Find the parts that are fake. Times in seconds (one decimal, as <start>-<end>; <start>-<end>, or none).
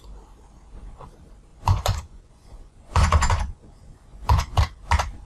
1.5-4.6